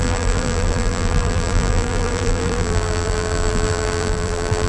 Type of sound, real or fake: fake